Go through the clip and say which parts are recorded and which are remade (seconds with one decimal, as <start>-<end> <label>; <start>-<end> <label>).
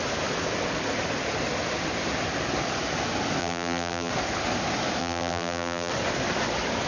0.0-3.4 recorded; 3.4-4.1 remade; 4.1-5.0 recorded; 5.0-5.9 remade; 5.9-6.9 recorded